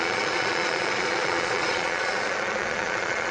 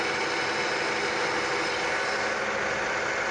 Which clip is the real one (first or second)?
second